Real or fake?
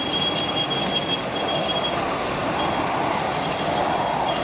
real